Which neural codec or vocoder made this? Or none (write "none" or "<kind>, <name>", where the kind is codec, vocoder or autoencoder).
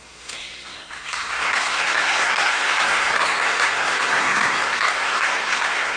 codec, SNAC